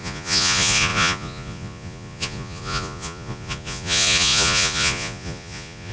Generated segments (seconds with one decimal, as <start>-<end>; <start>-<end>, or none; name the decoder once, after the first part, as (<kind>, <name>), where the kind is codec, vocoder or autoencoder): 0.0-5.9 (vocoder, Vocos)